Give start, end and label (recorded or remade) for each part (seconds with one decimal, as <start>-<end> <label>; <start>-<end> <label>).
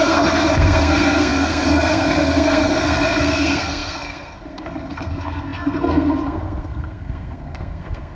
0.0-8.1 remade